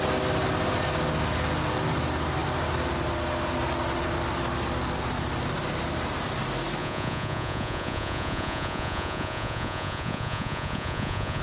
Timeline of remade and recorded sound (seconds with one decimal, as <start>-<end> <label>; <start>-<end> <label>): 0.0-6.8 recorded; 6.8-11.4 remade